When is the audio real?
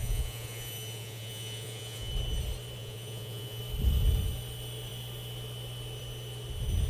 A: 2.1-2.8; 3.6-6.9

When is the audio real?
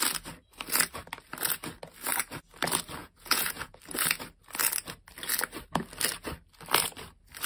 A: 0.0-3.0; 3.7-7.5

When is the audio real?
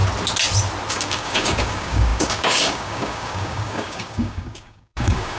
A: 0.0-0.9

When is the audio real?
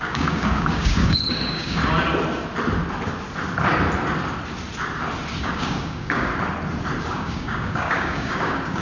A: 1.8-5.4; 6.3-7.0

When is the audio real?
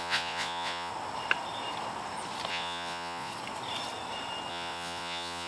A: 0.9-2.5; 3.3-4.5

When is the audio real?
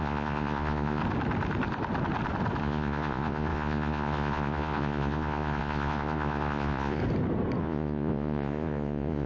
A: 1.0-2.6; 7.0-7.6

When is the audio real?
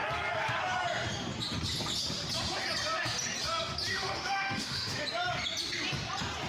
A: 0.0-3.9; 5.0-6.5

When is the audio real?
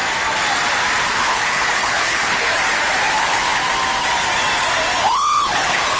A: 0.0-1.1; 2.5-3.2; 3.6-5.0